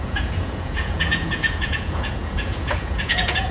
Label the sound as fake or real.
fake